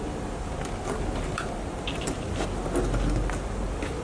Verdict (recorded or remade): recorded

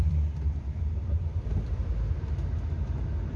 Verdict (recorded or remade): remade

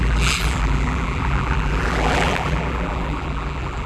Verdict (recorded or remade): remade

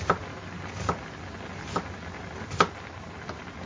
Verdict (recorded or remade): recorded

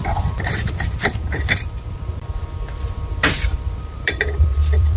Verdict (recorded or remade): remade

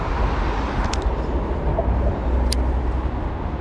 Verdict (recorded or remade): recorded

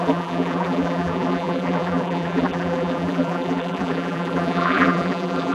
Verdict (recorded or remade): remade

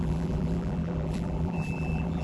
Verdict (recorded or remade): remade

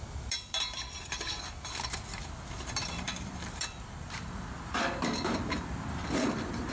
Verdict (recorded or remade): remade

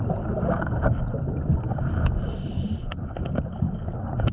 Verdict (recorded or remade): remade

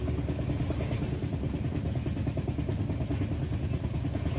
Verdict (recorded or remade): recorded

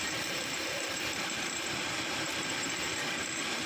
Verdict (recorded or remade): remade